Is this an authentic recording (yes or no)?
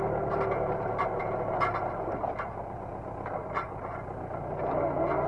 yes